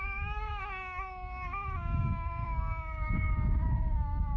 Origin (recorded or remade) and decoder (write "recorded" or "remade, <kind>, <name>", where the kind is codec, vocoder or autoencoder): remade, codec, DAC